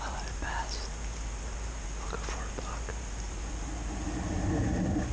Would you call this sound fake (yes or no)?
no